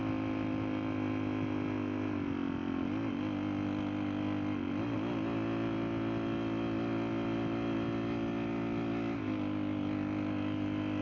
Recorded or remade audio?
recorded